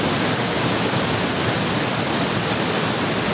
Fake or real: real